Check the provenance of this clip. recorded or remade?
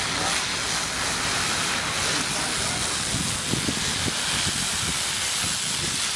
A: recorded